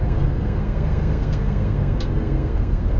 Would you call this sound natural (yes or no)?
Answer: no